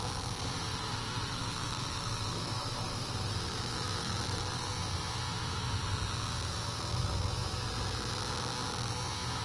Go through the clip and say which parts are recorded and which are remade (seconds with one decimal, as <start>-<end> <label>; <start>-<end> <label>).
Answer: 0.0-0.7 recorded; 0.7-4.6 remade; 4.6-9.4 recorded

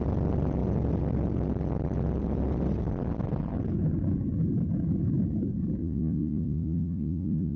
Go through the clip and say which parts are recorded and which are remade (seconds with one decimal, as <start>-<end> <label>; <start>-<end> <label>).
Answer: 0.0-5.8 recorded; 5.8-7.6 remade

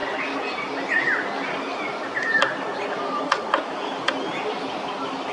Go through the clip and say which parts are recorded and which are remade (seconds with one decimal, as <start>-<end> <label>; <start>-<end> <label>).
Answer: 0.0-5.3 recorded

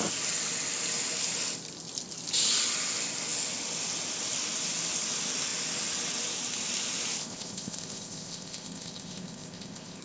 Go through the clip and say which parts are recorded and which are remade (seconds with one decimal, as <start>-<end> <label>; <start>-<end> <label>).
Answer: 0.0-7.2 recorded; 7.2-10.0 remade